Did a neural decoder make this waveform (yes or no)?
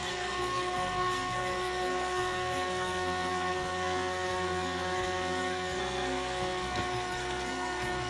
yes